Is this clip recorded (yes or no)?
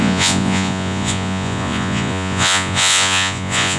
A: no